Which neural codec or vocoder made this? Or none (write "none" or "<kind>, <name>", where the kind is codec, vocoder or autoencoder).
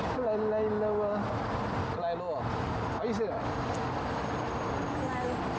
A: none